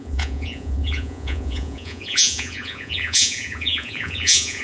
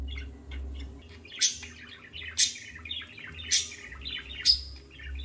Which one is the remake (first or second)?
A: first